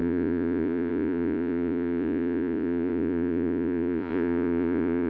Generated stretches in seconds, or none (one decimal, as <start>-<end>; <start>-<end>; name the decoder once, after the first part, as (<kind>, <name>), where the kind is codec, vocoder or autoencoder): 0.0-5.1 (vocoder, Vocos)